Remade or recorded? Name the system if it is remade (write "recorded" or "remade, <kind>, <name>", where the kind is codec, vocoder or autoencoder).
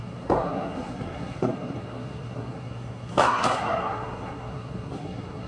remade, codec, SNAC